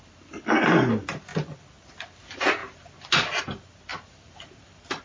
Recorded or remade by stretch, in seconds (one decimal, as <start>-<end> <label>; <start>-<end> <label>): 0.0-3.9 recorded; 3.9-5.0 remade

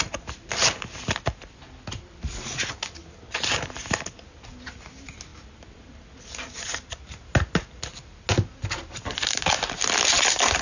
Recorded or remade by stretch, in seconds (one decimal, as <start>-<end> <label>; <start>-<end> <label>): 0.0-10.6 recorded

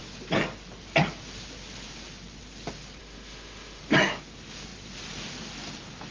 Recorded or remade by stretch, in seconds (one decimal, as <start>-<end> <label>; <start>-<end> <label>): 0.0-3.0 recorded; 3.0-3.8 remade; 3.8-6.1 recorded

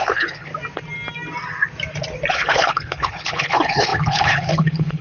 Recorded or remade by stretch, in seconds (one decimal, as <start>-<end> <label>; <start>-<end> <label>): 0.0-0.5 remade; 0.5-2.3 recorded; 2.3-5.0 remade

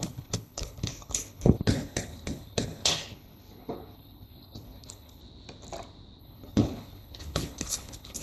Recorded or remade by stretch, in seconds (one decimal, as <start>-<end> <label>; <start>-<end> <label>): 0.0-5.2 remade; 5.2-6.2 recorded; 6.2-8.2 remade

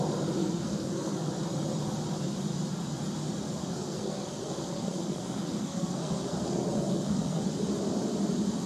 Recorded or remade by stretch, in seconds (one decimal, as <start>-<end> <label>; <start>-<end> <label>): 0.0-0.4 recorded; 0.4-1.3 remade; 1.3-3.6 recorded; 3.6-7.4 remade; 7.4-8.7 recorded